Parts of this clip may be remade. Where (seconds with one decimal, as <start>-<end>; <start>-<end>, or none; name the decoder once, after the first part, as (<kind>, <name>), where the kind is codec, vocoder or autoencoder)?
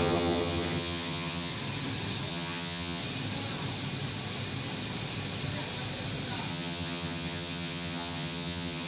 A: 0.0-1.5 (vocoder, HiFi-GAN); 2.3-3.0; 6.5-8.9